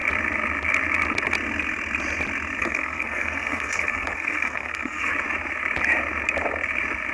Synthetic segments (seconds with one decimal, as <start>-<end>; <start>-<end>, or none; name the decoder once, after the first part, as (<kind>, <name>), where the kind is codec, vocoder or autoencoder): 2.6-5.1 (codec, SNAC)